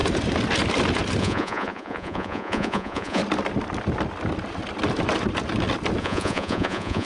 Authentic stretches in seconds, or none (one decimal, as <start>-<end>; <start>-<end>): 0.0-1.2; 3.2-6.0